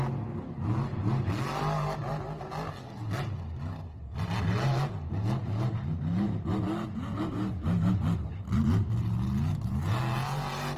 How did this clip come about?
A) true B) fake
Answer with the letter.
A